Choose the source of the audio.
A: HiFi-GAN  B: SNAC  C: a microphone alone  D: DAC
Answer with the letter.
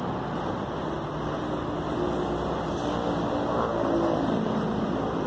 C